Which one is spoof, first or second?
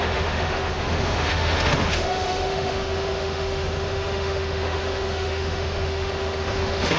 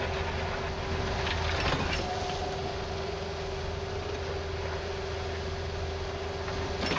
first